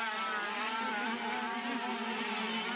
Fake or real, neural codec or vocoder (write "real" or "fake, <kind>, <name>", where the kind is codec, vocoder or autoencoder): real